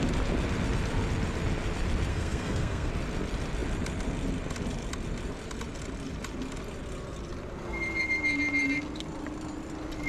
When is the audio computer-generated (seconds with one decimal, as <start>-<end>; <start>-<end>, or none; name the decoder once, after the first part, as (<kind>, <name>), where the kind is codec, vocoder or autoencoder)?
2.1-2.9 (codec, SNAC)